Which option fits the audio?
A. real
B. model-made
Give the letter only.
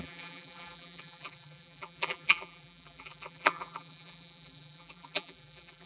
B